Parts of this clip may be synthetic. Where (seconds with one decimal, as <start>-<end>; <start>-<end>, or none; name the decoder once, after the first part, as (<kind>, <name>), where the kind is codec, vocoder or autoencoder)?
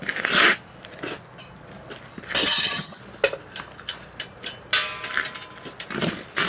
2.4-3.0 (vocoder, HiFi-GAN)